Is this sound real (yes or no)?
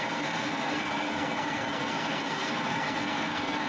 no